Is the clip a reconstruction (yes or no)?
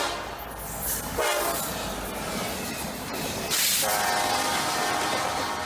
no